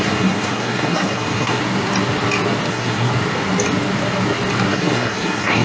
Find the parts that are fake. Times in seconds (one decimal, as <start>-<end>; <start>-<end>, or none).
0.0-1.6; 2.7-3.1; 4.7-5.6